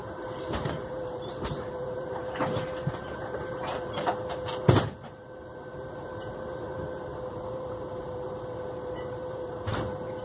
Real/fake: fake